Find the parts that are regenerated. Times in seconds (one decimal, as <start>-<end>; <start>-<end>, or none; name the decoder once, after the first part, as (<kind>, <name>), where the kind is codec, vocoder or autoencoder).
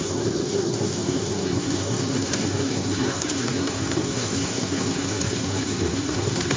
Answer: 0.0-6.6 (codec, SNAC)